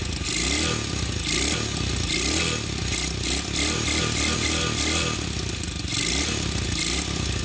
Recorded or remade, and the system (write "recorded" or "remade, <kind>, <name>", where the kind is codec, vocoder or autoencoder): recorded